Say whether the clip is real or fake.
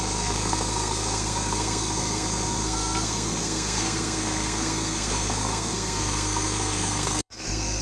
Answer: fake